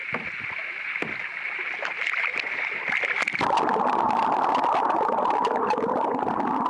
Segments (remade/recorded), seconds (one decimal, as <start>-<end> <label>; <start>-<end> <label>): 0.0-6.7 recorded